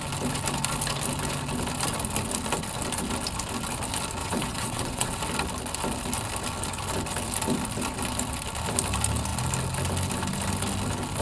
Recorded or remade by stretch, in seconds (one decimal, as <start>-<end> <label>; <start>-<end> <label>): 0.0-4.2 recorded; 4.2-5.2 remade; 5.2-11.2 recorded